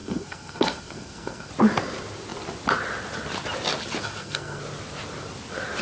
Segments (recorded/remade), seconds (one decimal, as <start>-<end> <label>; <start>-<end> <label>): 0.0-1.5 remade; 1.5-4.0 recorded; 4.0-4.6 remade; 4.6-5.8 recorded